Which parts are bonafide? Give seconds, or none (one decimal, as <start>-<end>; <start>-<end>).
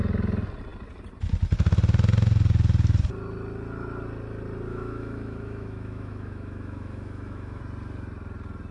0.0-4.7; 7.6-8.7